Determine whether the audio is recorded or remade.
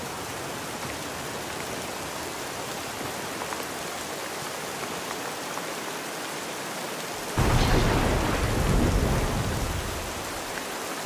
recorded